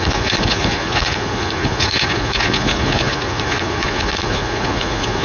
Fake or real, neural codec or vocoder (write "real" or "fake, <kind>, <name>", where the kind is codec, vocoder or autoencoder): fake, vocoder, Vocos